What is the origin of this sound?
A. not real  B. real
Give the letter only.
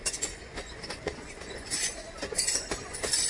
A